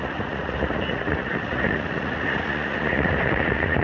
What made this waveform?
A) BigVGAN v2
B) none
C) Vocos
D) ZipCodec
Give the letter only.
C